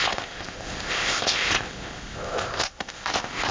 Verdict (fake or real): fake